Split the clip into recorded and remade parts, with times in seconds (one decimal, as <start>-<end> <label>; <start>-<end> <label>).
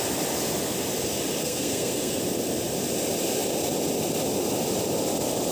0.0-1.4 recorded; 1.4-2.2 remade; 2.2-5.5 recorded